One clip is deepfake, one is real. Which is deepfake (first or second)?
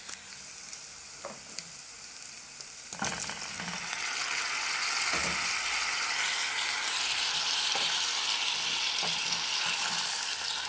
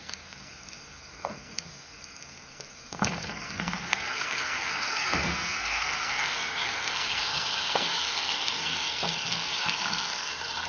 second